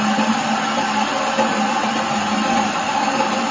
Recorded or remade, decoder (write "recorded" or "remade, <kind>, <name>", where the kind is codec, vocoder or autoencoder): recorded